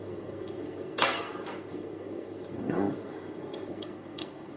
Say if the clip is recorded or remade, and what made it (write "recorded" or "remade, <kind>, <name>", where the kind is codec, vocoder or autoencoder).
remade, codec, SNAC